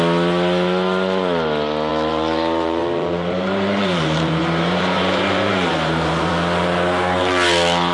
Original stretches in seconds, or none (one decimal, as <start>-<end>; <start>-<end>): 0.0-1.9; 6.3-7.9